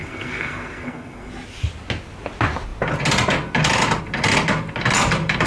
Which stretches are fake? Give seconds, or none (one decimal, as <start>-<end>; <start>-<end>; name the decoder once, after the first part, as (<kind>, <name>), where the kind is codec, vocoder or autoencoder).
0.0-1.3 (codec, SNAC)